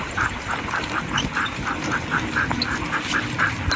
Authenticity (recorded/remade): recorded